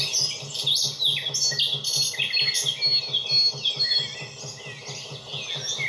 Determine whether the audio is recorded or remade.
recorded